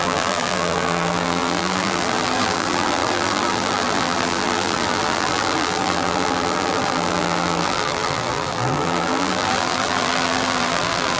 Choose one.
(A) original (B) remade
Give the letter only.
B